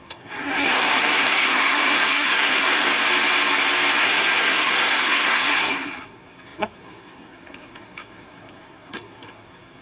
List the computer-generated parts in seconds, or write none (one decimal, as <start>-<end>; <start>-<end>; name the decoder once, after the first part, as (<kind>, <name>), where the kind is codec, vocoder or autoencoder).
0.0-2.9 (codec, SNAC); 4.0-9.8